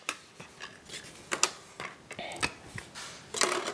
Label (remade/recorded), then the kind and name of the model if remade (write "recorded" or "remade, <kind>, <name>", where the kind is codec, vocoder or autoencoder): recorded